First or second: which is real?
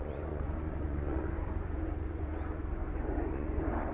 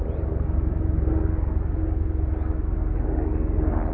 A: second